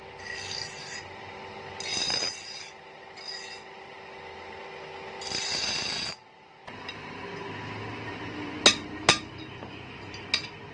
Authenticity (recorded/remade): recorded